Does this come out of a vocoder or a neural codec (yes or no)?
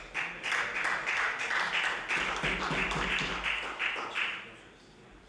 no